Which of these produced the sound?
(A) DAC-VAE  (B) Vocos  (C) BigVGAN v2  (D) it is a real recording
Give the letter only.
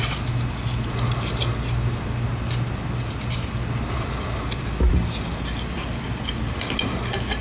D